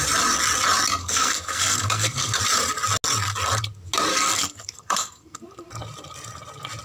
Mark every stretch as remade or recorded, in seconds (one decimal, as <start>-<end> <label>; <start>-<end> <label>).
0.0-1.0 recorded; 1.0-2.4 remade; 2.4-4.1 recorded; 4.1-5.4 remade; 5.4-6.8 recorded